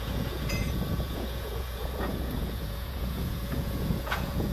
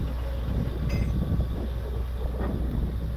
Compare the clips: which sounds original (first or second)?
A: second